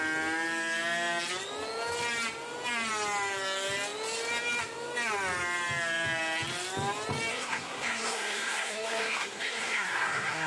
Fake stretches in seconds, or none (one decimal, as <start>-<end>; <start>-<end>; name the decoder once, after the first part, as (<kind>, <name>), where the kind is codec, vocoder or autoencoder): 7.3-10.5 (codec, SNAC)